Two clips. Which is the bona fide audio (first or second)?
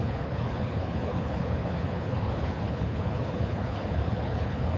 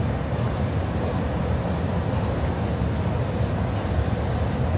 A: second